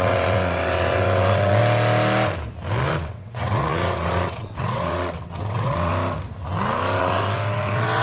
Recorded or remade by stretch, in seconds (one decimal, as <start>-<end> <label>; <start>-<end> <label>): 0.0-1.6 remade; 1.6-2.9 recorded; 2.9-5.9 remade; 5.9-7.0 recorded; 7.0-8.0 remade